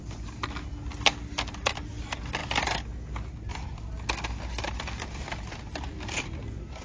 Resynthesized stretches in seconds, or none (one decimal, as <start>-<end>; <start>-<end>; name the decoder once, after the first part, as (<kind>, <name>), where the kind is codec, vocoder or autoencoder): none